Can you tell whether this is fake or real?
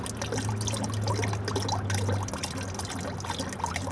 real